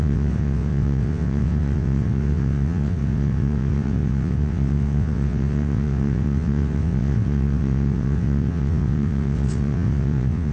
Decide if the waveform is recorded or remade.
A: remade